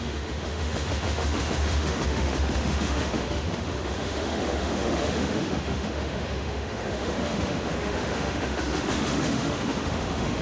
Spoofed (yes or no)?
yes